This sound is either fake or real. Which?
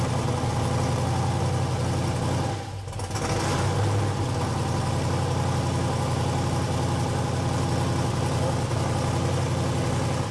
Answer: real